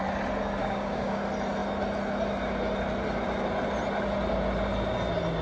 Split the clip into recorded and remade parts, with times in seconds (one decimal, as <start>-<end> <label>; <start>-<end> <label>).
0.0-0.6 recorded; 0.6-1.2 remade; 1.2-5.4 recorded